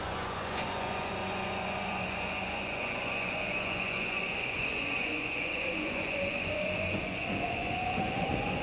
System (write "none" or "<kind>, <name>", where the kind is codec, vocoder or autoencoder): vocoder, Vocos